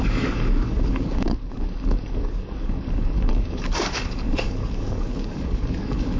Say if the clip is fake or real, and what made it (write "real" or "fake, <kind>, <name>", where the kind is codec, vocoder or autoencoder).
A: fake, codec, DAC